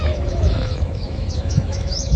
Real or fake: fake